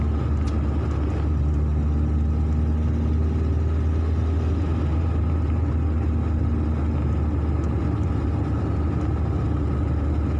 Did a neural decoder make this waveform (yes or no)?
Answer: no